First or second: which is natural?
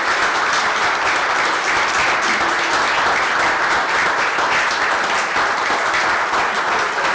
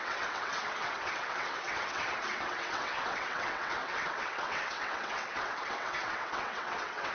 first